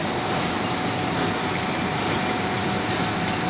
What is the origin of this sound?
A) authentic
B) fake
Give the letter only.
A